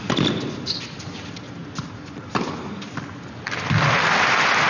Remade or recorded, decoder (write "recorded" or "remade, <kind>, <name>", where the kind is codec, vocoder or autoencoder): recorded